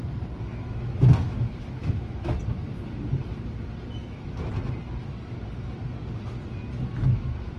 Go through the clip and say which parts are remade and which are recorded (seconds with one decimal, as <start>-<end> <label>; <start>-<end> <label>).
0.0-0.5 recorded; 0.5-2.4 remade; 2.4-4.0 recorded; 4.0-4.5 remade; 4.5-7.0 recorded; 7.0-7.6 remade